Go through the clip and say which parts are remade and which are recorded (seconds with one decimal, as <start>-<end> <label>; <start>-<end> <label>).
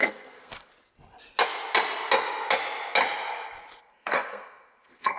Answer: 0.0-0.7 remade; 0.7-3.8 recorded; 3.8-5.2 remade